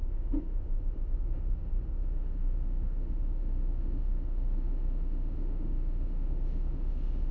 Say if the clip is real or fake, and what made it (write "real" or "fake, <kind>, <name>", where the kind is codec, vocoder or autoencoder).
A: fake, autoencoder, DAC-VAE